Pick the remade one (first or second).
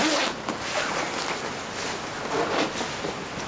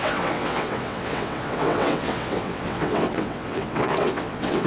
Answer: second